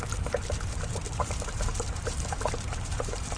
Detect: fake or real fake